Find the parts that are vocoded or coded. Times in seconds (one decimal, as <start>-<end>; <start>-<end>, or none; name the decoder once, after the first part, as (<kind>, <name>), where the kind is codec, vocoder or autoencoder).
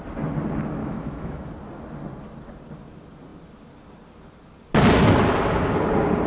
0.8-1.5 (autoencoder, DAC-VAE)